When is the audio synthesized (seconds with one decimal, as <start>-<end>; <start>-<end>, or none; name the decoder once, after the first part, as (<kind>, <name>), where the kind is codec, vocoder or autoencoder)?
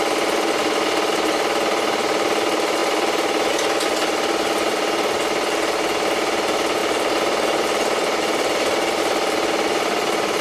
6.8-9.0 (vocoder, BigVGAN v2)